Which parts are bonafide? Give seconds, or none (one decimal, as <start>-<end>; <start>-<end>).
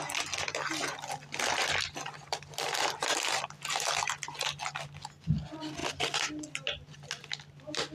0.0-7.9